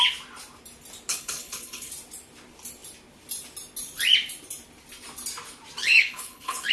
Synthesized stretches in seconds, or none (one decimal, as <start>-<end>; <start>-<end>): 1.1-1.9; 5.8-6.7